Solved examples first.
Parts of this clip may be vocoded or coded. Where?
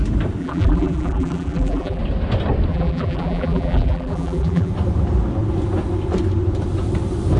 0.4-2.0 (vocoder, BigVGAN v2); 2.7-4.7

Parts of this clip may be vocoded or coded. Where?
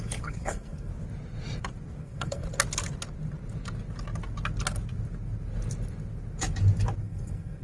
0.0-0.9 (codec, SNAC); 2.0-2.4; 7.0-7.6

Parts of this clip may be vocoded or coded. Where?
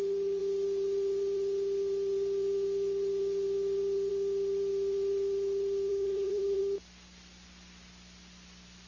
5.9-6.6 (codec, SNAC)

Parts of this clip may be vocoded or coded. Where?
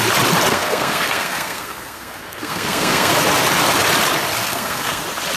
0.5-3.1 (codec, SNAC); 4.4-5.0